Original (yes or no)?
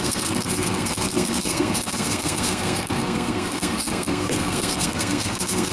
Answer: no